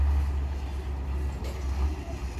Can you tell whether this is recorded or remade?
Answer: recorded